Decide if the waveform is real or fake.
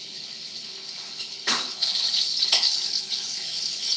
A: fake